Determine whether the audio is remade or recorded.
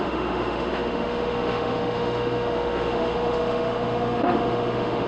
remade